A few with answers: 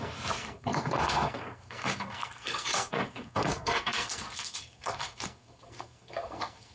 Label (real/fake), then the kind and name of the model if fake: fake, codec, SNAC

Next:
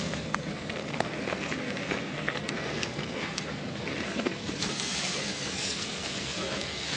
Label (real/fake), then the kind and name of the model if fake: fake, codec, SNAC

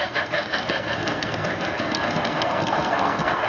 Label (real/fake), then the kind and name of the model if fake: fake, codec, SNAC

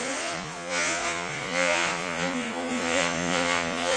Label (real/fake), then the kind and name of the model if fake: fake, vocoder, Vocos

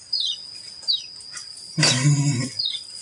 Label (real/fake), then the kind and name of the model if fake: real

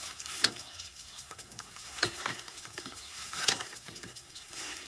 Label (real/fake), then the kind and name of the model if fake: fake, codec, SNAC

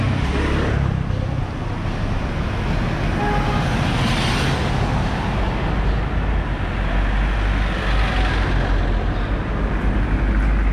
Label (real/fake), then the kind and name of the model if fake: real